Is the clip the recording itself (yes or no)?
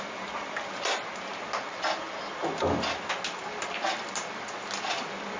yes